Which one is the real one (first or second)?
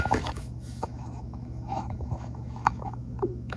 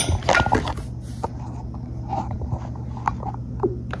second